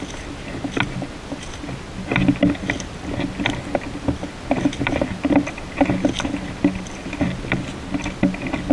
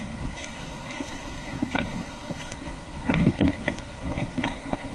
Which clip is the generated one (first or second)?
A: second